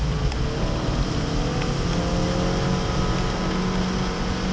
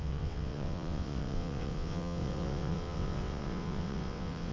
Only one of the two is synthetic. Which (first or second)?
second